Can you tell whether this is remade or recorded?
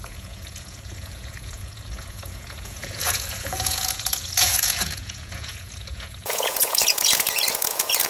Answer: remade